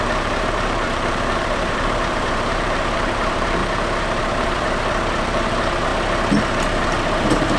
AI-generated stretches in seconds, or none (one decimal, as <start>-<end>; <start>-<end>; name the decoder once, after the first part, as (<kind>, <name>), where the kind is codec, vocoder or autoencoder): 0.0-3.6 (vocoder, BigVGAN v2); 4.2-5.9; 6.4-7.6